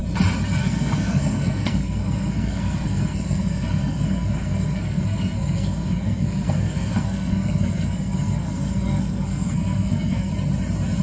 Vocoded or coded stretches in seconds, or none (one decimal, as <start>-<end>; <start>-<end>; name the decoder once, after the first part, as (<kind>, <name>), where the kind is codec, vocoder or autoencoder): 0.6-10.3 (codec, SNAC)